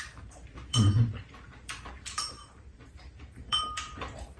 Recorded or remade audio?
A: remade